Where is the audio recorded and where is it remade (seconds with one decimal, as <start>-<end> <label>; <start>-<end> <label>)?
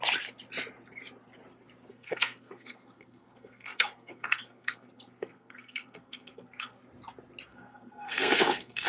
0.0-1.9 recorded; 1.9-6.8 remade; 6.8-7.5 recorded; 7.5-8.9 remade